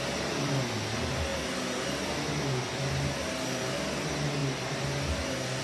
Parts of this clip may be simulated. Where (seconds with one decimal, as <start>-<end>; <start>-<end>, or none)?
none